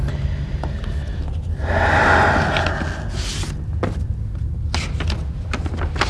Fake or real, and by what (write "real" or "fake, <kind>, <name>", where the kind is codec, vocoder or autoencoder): real